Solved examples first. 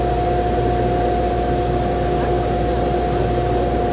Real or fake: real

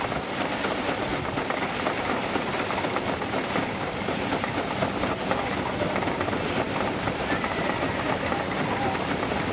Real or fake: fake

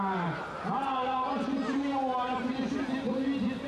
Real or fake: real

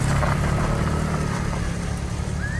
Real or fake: real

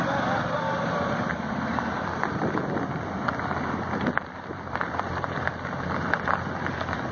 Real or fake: fake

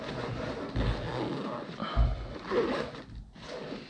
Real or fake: real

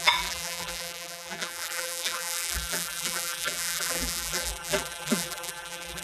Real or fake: fake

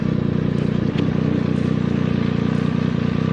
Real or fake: real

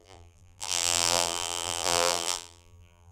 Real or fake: fake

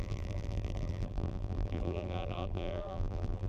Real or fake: fake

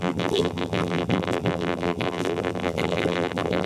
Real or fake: fake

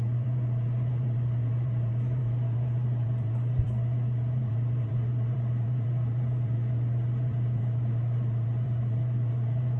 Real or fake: fake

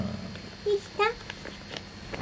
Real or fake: real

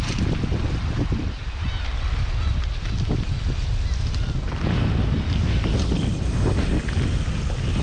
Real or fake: real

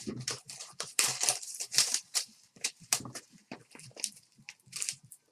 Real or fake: fake